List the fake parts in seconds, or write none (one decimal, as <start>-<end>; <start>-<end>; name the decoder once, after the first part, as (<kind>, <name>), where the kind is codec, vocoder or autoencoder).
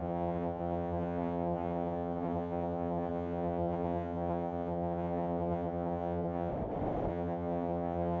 0.0-6.5 (vocoder, HiFi-GAN); 7.1-8.2